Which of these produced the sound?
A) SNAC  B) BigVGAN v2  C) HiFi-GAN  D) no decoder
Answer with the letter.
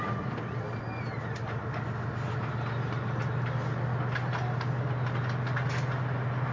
D